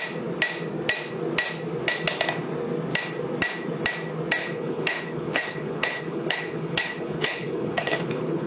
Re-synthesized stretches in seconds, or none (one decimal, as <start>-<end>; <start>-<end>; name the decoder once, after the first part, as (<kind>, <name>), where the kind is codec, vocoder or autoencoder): 4.4-8.5 (codec, HILCodec)